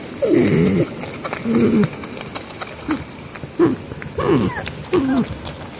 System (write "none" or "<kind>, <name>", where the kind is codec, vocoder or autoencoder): none